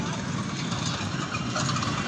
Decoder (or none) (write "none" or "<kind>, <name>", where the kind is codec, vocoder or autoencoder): none